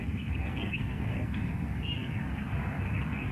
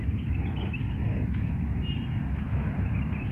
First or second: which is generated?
first